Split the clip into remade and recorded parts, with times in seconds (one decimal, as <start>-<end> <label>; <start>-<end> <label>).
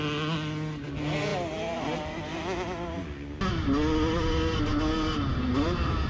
0.0-6.1 recorded